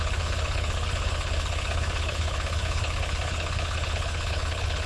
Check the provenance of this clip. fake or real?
fake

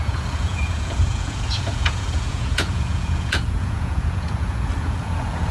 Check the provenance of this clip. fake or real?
fake